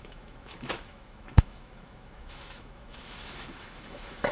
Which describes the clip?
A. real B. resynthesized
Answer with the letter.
B